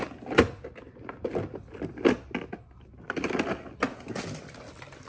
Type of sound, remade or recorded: recorded